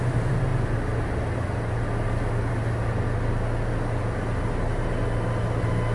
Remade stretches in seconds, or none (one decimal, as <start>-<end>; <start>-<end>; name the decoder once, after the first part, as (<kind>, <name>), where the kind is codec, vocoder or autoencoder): none